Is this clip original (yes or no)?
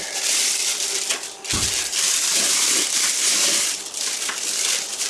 no